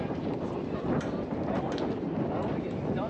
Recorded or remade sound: recorded